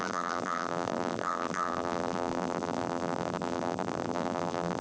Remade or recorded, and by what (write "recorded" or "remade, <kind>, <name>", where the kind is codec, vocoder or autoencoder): remade, vocoder, BigVGAN v2